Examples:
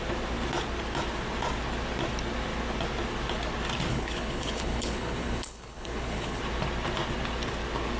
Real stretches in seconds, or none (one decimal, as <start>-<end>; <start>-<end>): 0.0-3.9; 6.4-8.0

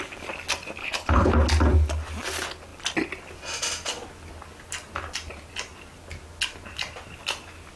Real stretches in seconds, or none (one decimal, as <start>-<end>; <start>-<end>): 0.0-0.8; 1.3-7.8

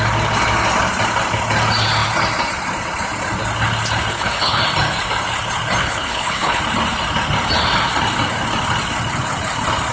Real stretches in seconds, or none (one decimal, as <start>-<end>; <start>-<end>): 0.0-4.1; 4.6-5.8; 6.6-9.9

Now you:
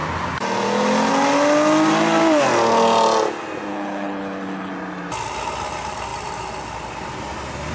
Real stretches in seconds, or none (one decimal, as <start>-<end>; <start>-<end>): 0.0-3.7; 4.7-7.7

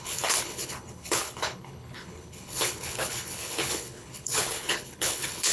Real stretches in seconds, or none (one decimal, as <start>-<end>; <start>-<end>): none

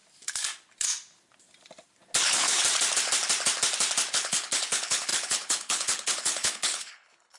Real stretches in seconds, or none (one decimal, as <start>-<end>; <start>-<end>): 0.0-2.2; 2.6-4.1